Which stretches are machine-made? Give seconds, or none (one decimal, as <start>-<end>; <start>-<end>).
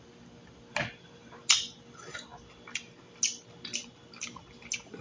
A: none